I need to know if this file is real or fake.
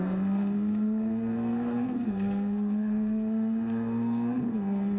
fake